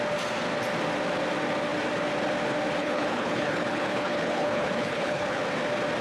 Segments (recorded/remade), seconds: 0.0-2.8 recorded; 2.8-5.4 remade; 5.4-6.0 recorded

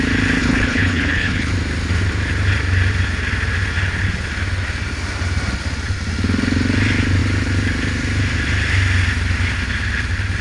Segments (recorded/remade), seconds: 0.0-0.4 recorded; 0.4-1.5 remade; 1.5-10.4 recorded

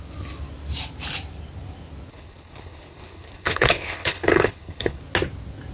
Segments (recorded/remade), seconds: 0.0-2.1 recorded; 2.1-5.0 remade; 5.0-5.7 recorded

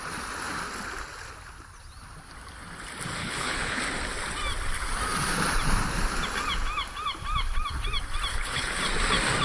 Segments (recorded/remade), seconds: 0.0-3.2 recorded; 3.2-3.8 remade; 3.8-8.3 recorded; 8.3-8.8 remade; 8.8-9.4 recorded

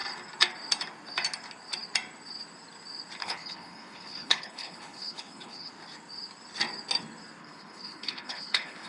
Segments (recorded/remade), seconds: 0.0-3.2 recorded; 3.2-5.7 remade; 5.7-7.4 recorded; 7.4-8.9 remade

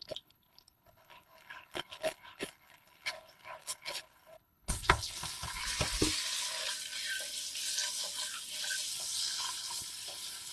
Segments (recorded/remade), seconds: 0.0-5.6 remade; 5.6-8.9 recorded; 8.9-10.5 remade

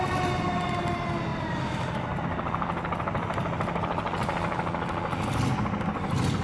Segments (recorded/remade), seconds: 0.0-6.4 recorded

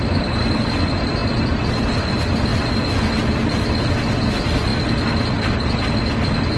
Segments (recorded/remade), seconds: 0.0-6.6 recorded